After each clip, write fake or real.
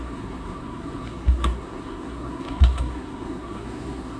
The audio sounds fake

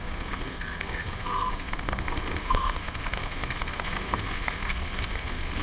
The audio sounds fake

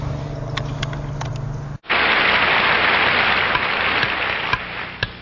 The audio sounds real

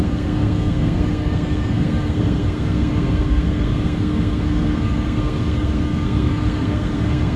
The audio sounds fake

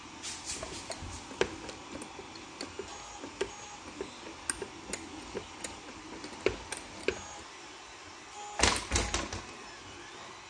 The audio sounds real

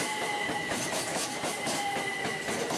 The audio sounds real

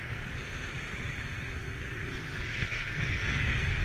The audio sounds fake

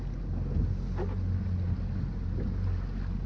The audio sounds real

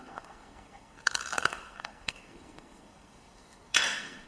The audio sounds fake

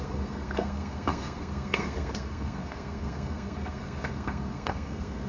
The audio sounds fake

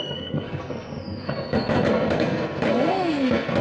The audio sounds fake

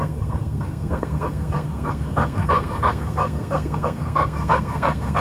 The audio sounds fake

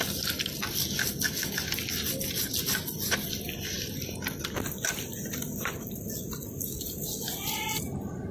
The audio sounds real